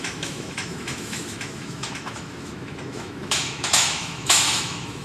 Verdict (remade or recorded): remade